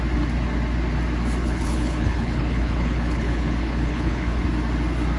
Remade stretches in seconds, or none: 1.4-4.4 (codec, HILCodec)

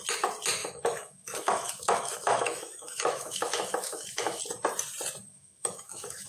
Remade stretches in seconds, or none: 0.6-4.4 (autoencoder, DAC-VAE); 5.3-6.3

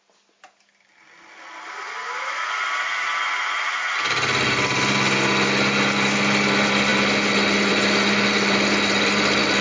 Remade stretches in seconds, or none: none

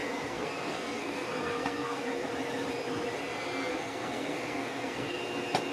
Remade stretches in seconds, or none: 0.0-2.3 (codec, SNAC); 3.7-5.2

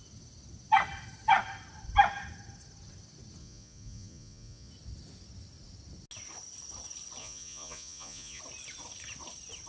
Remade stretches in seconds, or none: 3.4-4.7 (vocoder, Vocos); 7.2-8.4

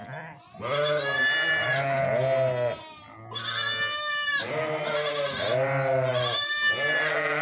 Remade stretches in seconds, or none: none

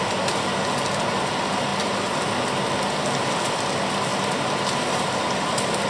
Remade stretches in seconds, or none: none